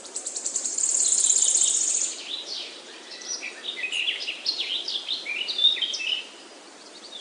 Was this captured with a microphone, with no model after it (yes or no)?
no